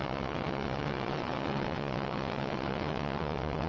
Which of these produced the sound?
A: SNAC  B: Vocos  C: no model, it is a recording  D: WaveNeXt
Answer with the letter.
D